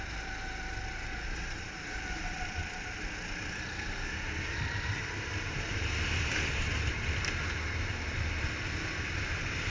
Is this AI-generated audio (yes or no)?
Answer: no